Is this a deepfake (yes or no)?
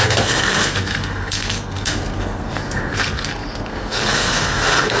yes